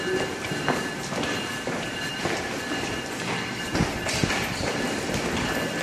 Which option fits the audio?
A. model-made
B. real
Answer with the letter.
A